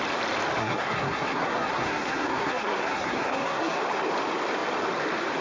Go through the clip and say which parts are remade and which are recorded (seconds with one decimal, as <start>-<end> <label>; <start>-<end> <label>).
0.0-0.6 recorded; 0.6-3.8 remade; 3.8-5.4 recorded